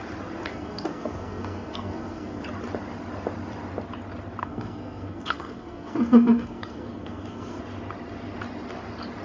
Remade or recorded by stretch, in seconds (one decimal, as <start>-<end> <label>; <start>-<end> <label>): 0.0-0.5 recorded; 0.5-2.4 remade; 2.4-4.4 recorded; 4.4-7.6 remade; 7.6-9.2 recorded